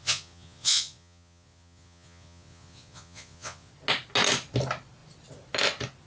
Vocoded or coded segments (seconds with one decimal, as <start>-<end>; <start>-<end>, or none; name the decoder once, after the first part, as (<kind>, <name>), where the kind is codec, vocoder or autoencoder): 0.0-3.7 (vocoder, Vocos)